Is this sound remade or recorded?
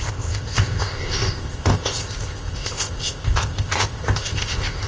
remade